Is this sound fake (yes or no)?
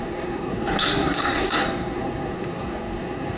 yes